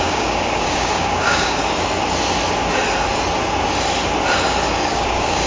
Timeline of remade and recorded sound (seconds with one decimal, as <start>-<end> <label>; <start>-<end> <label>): 0.0-1.6 remade; 1.6-4.9 recorded; 4.9-5.5 remade